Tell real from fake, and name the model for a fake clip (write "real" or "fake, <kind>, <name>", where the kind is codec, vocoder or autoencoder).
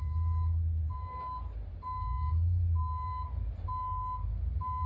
real